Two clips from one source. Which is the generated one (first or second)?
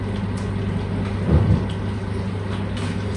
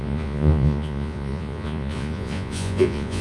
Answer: second